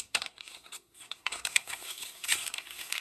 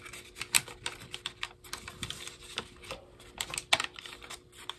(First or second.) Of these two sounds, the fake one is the first